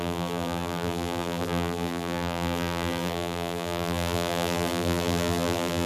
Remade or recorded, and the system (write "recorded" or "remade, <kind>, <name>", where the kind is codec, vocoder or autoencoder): remade, vocoder, BigVGAN v2